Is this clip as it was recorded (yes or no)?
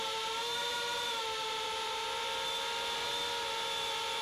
no